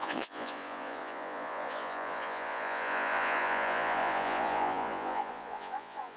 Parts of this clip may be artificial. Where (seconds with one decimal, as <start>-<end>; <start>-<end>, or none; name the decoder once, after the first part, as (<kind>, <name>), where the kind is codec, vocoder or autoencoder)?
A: 0.0-6.2 (vocoder, Vocos)